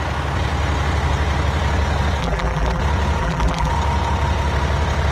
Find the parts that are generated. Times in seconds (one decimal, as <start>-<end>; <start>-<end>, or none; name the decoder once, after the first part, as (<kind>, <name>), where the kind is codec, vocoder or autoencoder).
2.2-2.8 (vocoder, BigVGAN v2); 3.2-3.7